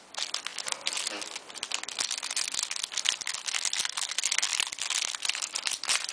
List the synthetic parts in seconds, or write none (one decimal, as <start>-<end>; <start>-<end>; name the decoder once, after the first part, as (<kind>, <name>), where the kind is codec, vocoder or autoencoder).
4.5-6.1 (vocoder, BigVGAN v2)